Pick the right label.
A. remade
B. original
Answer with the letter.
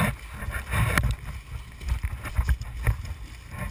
B